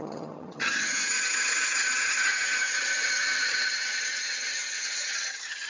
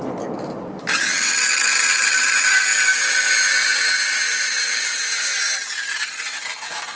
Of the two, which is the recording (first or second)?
second